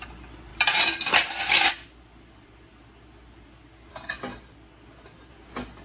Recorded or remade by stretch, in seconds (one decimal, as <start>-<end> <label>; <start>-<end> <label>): 0.0-5.8 recorded